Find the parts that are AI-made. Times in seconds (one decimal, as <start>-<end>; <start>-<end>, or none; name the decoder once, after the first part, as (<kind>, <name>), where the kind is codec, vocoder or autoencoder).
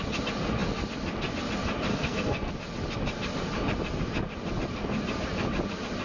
1.9-2.5 (codec, SNAC)